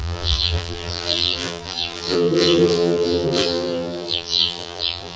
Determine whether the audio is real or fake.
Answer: fake